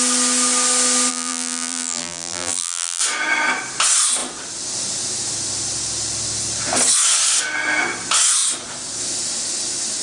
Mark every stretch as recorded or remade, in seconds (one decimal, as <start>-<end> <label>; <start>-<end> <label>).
0.0-1.1 recorded; 1.1-3.0 remade; 3.0-10.0 recorded